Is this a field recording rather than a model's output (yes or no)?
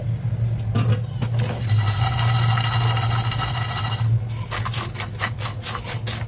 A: yes